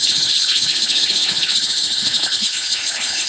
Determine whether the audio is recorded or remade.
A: remade